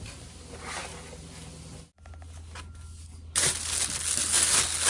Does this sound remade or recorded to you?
recorded